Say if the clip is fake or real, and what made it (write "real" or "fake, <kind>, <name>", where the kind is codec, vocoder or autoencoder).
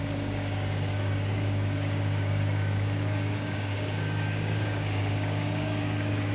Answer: fake, codec, DAC